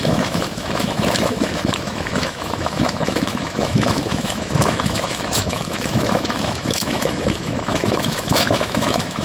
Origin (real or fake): fake